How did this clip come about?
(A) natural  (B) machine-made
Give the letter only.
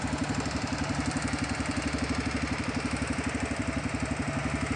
A